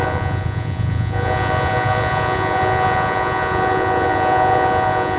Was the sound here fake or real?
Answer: fake